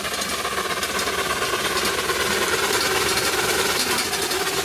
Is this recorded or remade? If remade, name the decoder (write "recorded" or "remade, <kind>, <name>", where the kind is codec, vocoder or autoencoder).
recorded